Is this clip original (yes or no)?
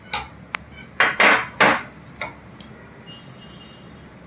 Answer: yes